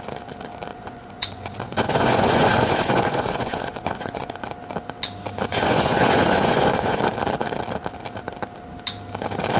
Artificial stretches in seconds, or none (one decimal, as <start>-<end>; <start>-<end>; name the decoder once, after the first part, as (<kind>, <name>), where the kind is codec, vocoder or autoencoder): 0.7-4.4 (vocoder, Vocos); 5.5-7.0